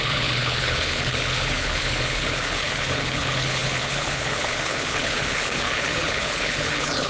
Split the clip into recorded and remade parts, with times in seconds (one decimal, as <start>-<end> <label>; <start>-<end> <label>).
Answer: 0.0-7.1 remade

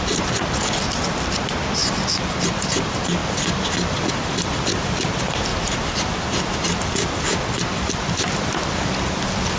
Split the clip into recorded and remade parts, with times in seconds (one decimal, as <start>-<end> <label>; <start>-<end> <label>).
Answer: 0.0-3.2 remade; 3.2-4.1 recorded; 4.1-5.5 remade; 5.5-8.0 recorded; 8.0-9.6 remade